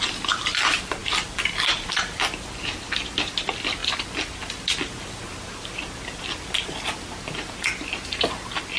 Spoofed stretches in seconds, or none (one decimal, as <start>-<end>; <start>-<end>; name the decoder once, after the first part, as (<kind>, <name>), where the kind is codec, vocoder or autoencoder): none